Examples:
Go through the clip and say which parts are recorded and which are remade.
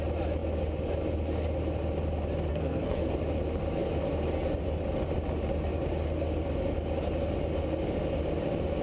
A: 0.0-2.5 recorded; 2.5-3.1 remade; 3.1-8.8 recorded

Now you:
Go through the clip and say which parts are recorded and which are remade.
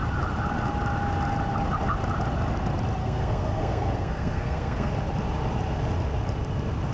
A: 0.0-3.0 recorded; 3.0-4.9 remade; 4.9-6.9 recorded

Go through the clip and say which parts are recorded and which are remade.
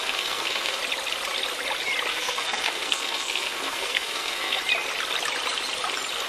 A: 0.0-0.8 remade; 0.8-2.1 recorded; 2.1-4.6 remade; 4.6-6.3 recorded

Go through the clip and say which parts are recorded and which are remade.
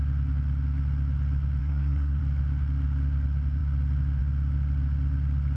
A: 0.0-1.6 recorded; 1.6-2.2 remade; 2.2-5.6 recorded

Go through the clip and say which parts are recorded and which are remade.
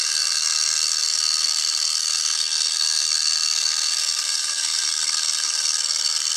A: 0.0-6.4 remade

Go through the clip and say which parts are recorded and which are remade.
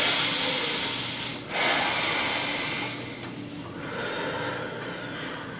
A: 0.0-5.6 recorded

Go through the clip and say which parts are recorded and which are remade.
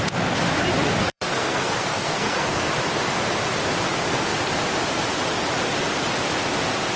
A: 0.0-1.0 recorded; 1.0-2.7 remade; 2.7-7.0 recorded